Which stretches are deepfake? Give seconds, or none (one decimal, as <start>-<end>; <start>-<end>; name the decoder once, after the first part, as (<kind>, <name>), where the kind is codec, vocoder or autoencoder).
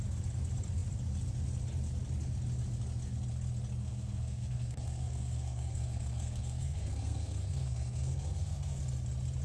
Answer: 3.8-8.8 (codec, SNAC)